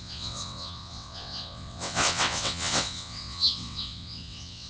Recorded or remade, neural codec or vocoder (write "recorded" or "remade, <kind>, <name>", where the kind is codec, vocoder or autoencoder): remade, vocoder, WaveNeXt